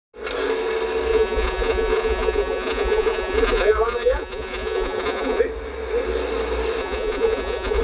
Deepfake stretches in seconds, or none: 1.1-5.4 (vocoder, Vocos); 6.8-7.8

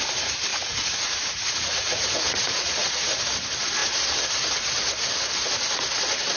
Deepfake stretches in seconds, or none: 0.5-3.1 (vocoder, Vocos)